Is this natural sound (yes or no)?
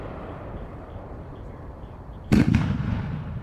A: no